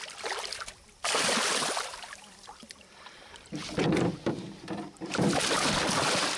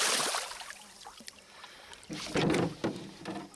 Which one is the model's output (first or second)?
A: first